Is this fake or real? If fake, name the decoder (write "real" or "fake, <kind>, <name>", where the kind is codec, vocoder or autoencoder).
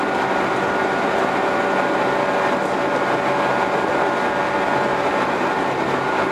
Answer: real